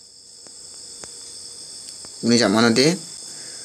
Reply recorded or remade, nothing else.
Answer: recorded